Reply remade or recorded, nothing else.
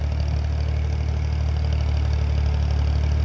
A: recorded